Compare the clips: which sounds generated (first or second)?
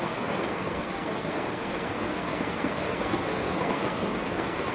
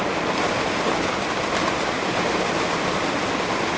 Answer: first